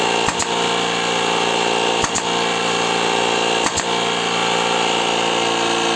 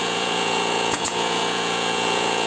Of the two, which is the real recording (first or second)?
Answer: first